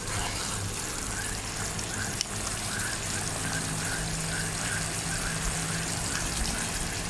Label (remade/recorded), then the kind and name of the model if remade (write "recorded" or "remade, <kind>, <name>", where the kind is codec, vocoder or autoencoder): recorded